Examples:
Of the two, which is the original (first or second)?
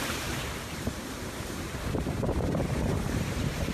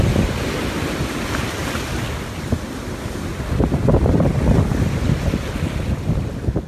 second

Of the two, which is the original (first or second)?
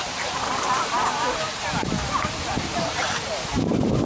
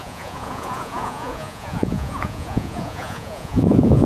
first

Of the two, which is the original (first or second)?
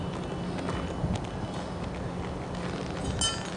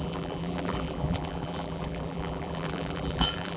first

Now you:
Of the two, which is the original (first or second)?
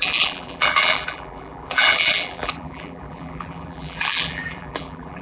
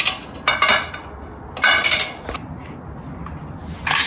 second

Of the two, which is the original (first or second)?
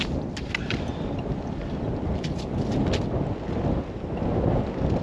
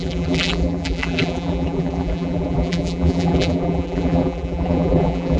first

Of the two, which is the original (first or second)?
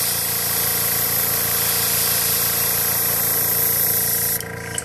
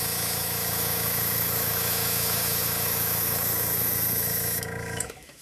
first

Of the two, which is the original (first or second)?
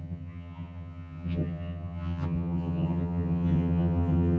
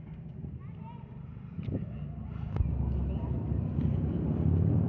second